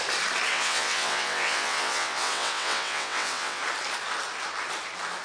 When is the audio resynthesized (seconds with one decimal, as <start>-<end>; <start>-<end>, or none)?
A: 0.5-3.6